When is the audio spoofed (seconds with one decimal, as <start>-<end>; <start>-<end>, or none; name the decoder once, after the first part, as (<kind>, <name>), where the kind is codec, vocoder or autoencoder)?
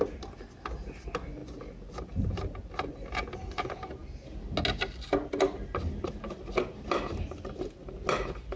none